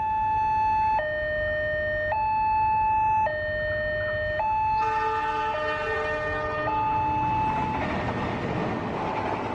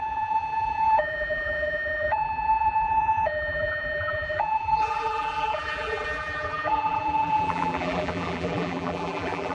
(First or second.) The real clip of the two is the first